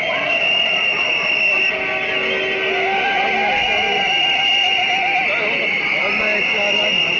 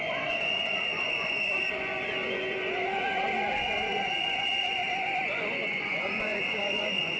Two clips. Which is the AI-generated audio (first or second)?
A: second